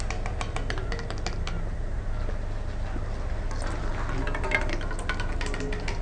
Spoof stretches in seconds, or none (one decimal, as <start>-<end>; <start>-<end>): none